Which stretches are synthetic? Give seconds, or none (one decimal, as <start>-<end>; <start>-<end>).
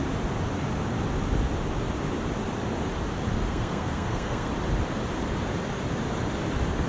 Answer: 3.5-4.5